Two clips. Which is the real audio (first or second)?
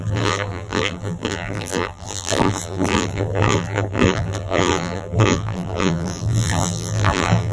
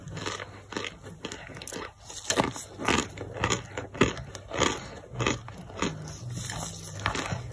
second